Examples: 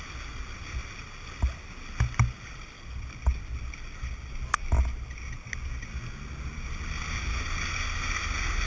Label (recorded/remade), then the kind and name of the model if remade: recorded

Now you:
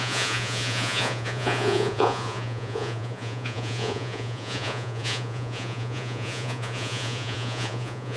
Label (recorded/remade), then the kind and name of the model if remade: remade, vocoder, Vocos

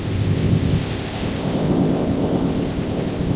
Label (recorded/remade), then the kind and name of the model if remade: remade, codec, ZipCodec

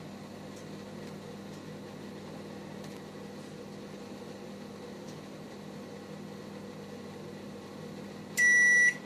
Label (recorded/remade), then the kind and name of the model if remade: recorded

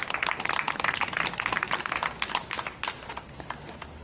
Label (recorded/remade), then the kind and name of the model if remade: recorded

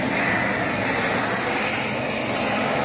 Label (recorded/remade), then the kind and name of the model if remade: recorded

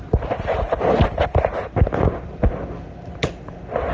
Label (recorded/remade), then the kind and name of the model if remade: recorded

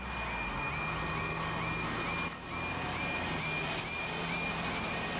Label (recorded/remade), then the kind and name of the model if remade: recorded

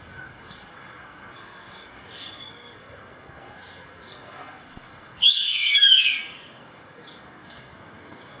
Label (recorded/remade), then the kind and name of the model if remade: remade, codec, SNAC